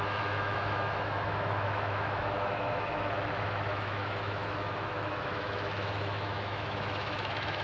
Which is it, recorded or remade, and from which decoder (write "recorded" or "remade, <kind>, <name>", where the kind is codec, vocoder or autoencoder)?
remade, autoencoder, DAC-VAE